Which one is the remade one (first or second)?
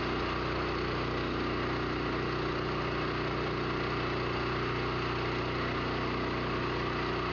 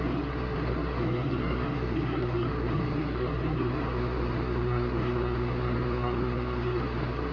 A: second